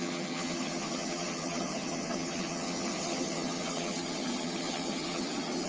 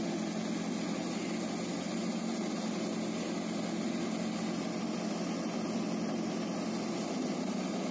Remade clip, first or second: first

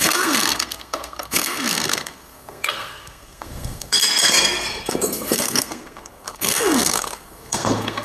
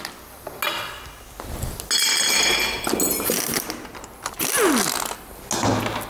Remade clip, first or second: first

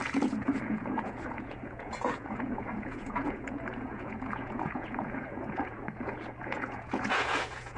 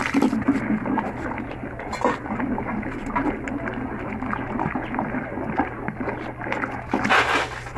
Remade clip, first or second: first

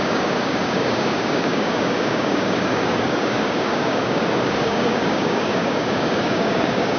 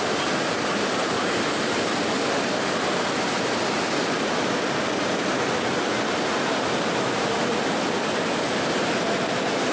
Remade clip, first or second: first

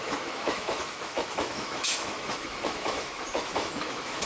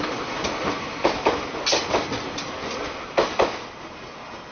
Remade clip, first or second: first